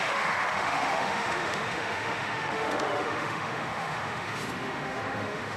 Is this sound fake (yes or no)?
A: yes